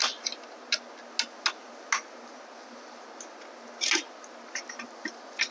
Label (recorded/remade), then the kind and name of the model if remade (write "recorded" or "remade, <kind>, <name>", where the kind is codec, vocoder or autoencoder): recorded